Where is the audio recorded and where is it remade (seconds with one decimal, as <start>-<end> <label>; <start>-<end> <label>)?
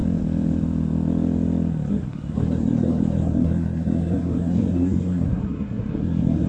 0.0-1.9 recorded; 1.9-6.5 remade